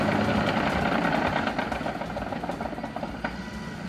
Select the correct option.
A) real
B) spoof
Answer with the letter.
A